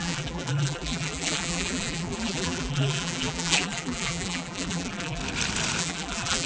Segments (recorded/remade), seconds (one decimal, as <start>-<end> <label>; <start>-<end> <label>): 0.0-5.2 remade; 5.2-5.8 recorded; 5.8-6.5 remade